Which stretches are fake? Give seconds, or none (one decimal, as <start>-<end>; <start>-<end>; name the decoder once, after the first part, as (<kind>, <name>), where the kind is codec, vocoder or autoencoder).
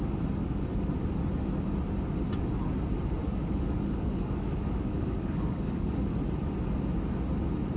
0.4-0.9 (codec, DAC); 3.2-6.2